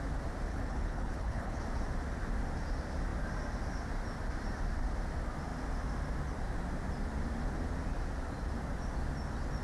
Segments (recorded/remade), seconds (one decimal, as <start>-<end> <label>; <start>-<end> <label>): 0.0-0.5 recorded; 0.5-1.6 remade; 1.6-9.6 recorded